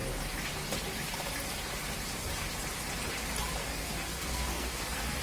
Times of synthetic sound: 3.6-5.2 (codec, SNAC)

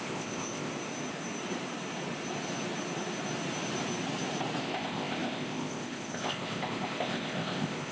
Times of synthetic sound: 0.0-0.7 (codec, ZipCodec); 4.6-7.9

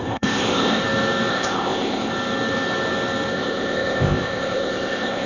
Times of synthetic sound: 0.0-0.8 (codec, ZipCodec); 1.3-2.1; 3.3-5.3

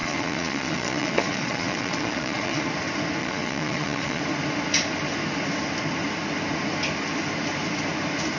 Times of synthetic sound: 0.0-2.7 (vocoder, Vocos); 3.2-4.2

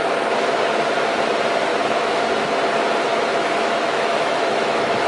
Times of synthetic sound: 1.7-2.2 (autoencoder, DAC-VAE); 3.1-5.1

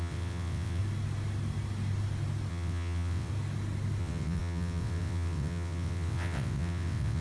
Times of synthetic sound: 0.0-0.8 (vocoder, WaveNeXt); 2.5-3.3; 4.0-7.2

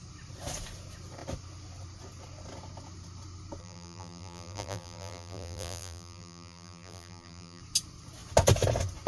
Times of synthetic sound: 3.6-7.6 (vocoder, BigVGAN v2)